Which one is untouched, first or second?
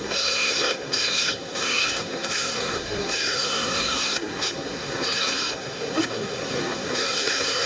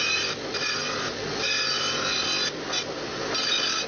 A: second